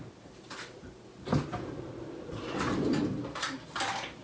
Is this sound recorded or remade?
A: recorded